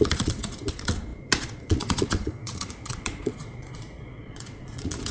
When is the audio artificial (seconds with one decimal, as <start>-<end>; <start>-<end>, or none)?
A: 0.0-5.1